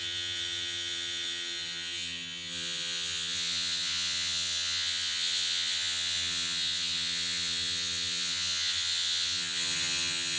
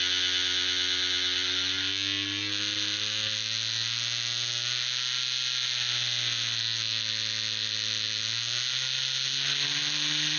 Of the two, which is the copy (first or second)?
first